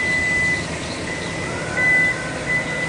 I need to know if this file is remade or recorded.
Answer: recorded